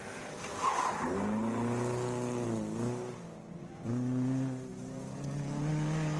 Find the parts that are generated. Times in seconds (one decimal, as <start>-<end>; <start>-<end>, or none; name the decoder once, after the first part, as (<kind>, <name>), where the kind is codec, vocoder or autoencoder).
4.7-5.3 (vocoder, Vocos)